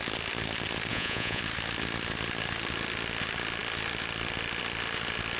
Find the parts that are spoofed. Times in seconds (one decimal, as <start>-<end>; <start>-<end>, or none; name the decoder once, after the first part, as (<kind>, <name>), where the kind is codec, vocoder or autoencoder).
0.9-1.4 (vocoder, Vocos)